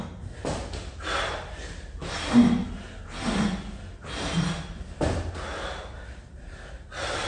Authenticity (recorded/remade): recorded